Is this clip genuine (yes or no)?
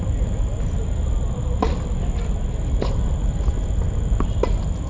yes